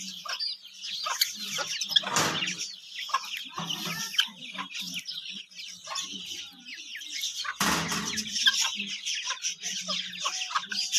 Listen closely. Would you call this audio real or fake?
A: real